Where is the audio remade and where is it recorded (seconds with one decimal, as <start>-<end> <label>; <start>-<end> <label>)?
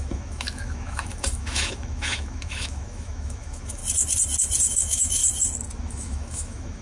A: 0.0-3.8 remade; 3.8-4.7 recorded; 4.7-5.2 remade; 5.2-5.8 recorded; 5.8-6.8 remade